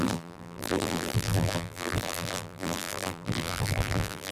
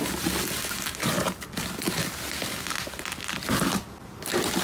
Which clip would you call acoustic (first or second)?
second